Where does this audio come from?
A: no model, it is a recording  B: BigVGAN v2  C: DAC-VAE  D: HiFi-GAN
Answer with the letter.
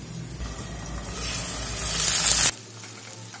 A